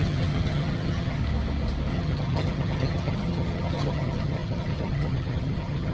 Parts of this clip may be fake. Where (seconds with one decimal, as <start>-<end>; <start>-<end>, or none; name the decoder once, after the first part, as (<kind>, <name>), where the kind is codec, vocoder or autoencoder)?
0.0-1.2 (vocoder, HiFi-GAN); 1.9-5.9